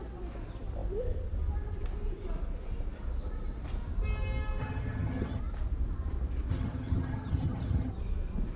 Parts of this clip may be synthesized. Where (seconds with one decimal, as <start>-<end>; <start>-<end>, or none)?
4.6-5.4; 6.5-7.9